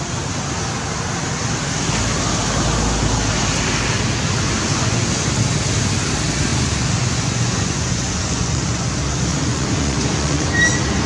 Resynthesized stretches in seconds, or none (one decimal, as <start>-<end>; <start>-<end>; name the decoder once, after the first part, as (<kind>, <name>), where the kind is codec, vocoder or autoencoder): 4.7-5.4 (vocoder, Vocos); 6.5-8.9; 9.3-10.5